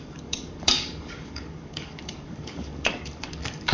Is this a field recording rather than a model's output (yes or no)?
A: no